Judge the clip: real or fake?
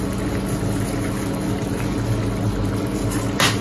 real